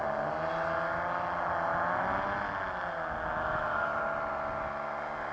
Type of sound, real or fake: real